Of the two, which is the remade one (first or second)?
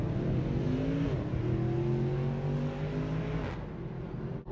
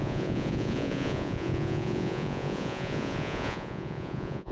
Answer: second